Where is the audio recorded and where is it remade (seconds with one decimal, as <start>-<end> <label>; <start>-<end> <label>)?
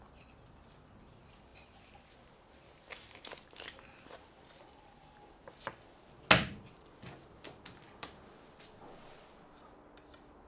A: 0.0-10.5 recorded